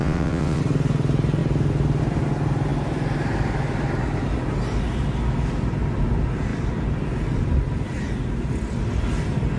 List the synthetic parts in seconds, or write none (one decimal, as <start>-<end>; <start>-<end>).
0.0-0.6